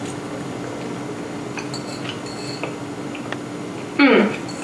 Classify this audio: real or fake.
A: real